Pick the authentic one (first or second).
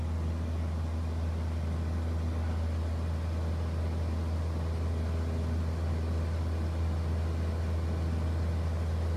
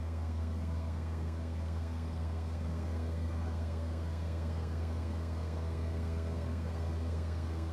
first